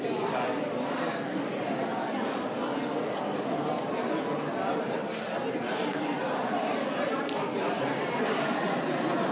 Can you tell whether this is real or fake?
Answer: real